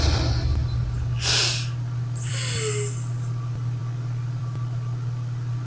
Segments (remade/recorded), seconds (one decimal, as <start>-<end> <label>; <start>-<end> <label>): 0.0-5.7 recorded